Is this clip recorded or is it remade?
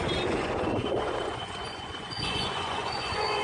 remade